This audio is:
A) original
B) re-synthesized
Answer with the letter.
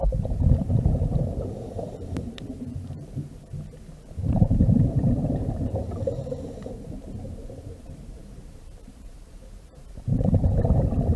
B